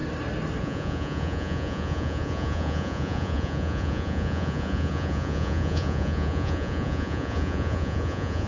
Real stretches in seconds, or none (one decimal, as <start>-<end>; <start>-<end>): 0.0-0.6